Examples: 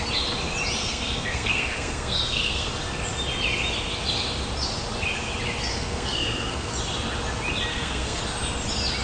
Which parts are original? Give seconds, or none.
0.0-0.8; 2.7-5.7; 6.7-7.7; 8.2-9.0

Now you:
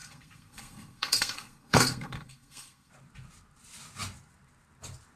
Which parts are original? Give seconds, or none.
2.9-5.2